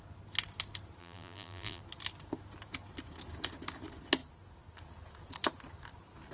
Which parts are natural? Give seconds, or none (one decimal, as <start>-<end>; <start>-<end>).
0.0-1.0; 1.8-6.3